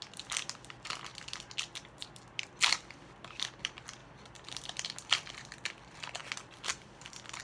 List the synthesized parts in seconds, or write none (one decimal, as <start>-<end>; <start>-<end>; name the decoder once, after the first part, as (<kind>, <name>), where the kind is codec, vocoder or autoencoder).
none